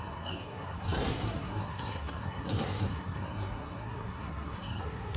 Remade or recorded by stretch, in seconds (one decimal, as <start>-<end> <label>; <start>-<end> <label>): 0.0-5.2 remade